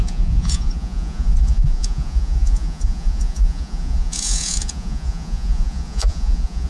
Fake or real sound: fake